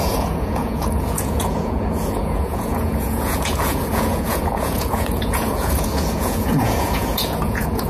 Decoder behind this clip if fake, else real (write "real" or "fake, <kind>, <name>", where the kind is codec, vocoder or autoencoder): fake, vocoder, Vocos